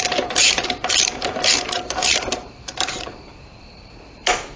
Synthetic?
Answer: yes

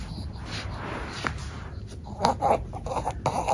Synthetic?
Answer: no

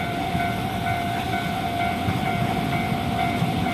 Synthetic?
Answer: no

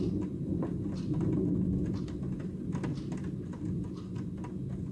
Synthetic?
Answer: no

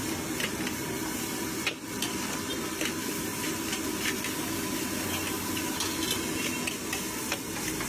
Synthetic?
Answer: no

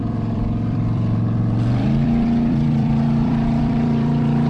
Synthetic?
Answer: yes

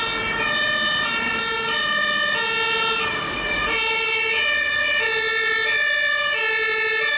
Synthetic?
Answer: no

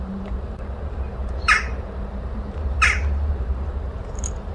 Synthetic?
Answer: yes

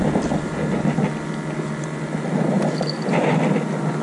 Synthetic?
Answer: no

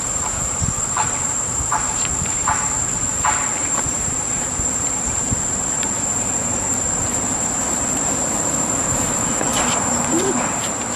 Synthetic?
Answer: yes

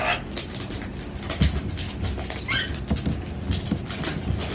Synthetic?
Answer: no